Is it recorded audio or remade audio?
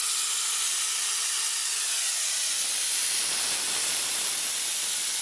recorded